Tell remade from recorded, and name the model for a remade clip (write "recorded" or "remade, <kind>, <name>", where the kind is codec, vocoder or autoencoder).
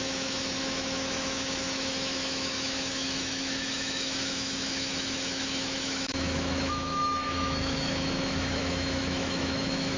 remade, autoencoder, DAC-VAE